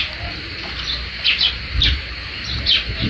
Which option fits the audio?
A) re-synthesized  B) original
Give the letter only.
A